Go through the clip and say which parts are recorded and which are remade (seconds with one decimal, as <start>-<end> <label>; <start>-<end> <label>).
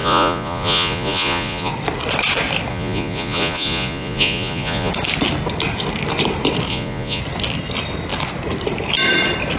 0.0-1.7 remade; 1.7-2.7 recorded; 2.7-4.9 remade; 4.9-6.7 recorded; 6.7-7.2 remade; 7.2-9.6 recorded